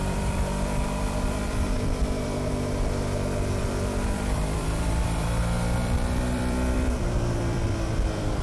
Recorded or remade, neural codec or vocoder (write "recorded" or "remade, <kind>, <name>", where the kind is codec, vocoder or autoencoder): remade, vocoder, BigVGAN v2